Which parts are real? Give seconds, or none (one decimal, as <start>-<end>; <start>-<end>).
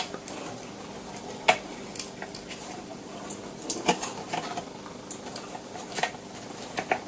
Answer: 0.0-7.1